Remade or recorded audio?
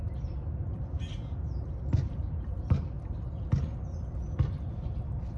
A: recorded